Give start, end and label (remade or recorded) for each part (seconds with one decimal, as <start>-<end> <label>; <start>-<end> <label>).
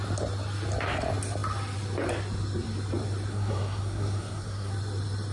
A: 0.0-3.3 recorded; 3.3-4.7 remade; 4.7-5.3 recorded